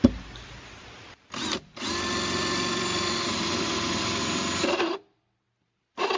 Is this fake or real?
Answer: real